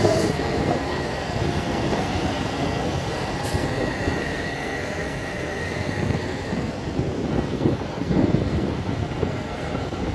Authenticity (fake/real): fake